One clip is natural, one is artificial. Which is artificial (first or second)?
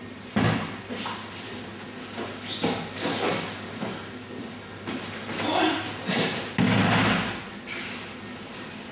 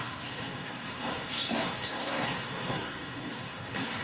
second